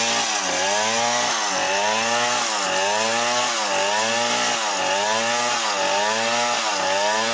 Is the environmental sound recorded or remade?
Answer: recorded